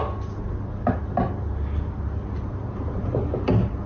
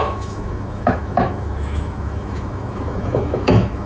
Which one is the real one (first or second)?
first